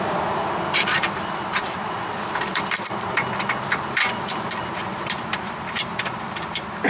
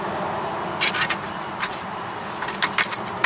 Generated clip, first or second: first